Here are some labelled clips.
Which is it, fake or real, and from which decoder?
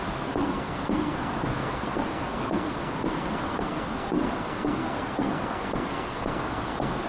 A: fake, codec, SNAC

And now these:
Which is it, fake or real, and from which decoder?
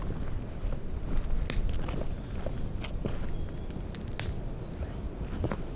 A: real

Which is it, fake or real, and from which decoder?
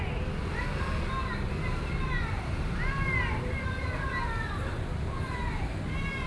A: real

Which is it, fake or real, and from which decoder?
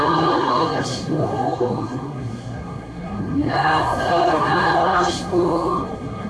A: fake, codec, SNAC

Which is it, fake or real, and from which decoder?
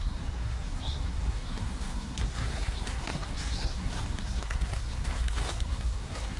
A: fake, codec, SNAC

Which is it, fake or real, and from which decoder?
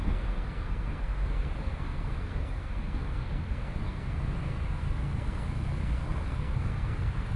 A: fake, codec, SNAC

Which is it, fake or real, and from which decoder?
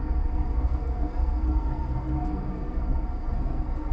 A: fake, codec, SNAC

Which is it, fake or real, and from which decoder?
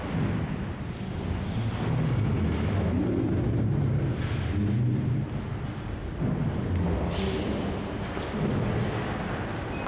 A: real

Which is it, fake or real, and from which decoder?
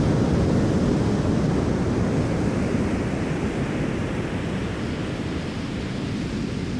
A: real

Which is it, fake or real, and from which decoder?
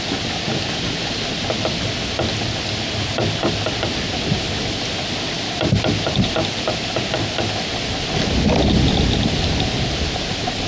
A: real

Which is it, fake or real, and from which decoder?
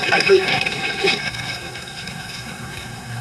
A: fake, codec, SNAC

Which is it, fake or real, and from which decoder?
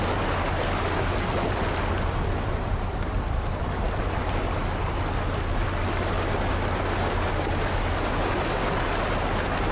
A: real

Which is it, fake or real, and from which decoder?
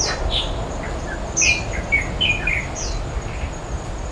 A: real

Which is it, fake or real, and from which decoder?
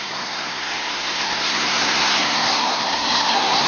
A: fake, codec, SNAC